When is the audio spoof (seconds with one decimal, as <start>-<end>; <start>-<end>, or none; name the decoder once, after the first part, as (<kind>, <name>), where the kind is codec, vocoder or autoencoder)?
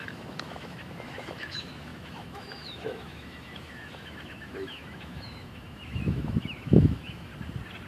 0.0-7.3 (autoencoder, DAC-VAE)